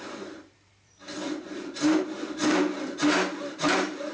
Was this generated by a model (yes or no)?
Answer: yes